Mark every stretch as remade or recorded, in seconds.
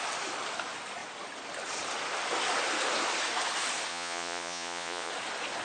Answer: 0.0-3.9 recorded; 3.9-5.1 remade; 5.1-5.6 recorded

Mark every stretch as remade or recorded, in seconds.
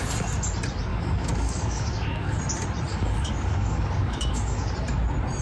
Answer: 0.0-0.9 recorded; 0.9-2.4 remade; 2.4-2.9 recorded; 2.9-4.7 remade; 4.7-5.4 recorded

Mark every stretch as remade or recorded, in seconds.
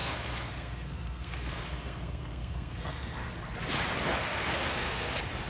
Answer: 0.0-3.3 remade; 3.3-4.3 recorded; 4.3-5.1 remade; 5.1-5.5 recorded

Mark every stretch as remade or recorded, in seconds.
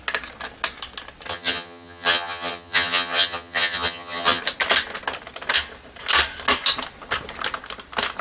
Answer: 0.0-1.3 recorded; 1.3-4.4 remade; 4.4-8.2 recorded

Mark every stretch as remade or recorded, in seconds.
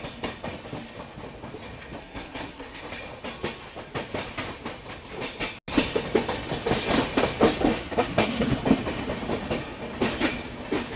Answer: 0.0-2.0 recorded; 2.0-2.8 remade; 2.8-7.7 recorded; 7.7-8.5 remade; 8.5-11.0 recorded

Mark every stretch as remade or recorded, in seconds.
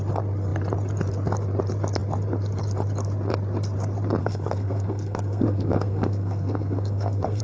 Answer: 0.0-4.2 recorded; 4.2-7.4 remade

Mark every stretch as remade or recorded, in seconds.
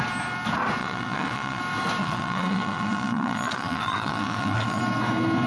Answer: 0.0-0.8 recorded; 0.8-1.6 remade; 1.6-2.0 recorded; 2.0-4.8 remade; 4.8-5.5 recorded